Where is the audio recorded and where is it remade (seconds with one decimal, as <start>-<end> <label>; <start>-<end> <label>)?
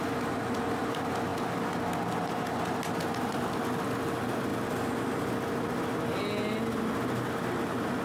0.0-8.0 recorded